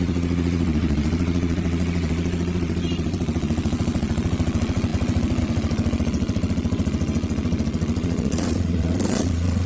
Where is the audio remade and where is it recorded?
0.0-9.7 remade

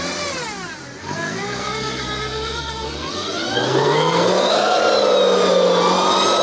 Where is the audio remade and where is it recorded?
0.0-1.0 recorded; 1.0-4.8 remade; 4.8-6.4 recorded

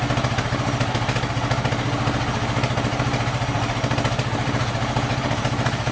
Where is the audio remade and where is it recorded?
0.0-5.9 recorded

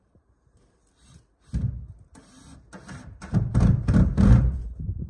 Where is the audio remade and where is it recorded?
0.0-0.8 remade; 0.8-3.9 recorded; 3.9-5.1 remade

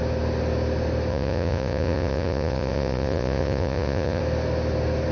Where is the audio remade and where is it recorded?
0.0-1.1 recorded; 1.1-4.2 remade; 4.2-5.1 recorded

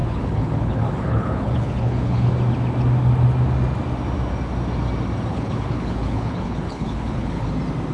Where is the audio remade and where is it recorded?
0.0-2.3 remade; 2.3-5.3 recorded; 5.3-7.5 remade; 7.5-7.9 recorded

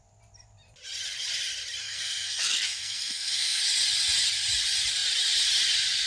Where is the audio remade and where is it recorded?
0.0-1.8 recorded; 1.8-3.6 remade; 3.6-6.1 recorded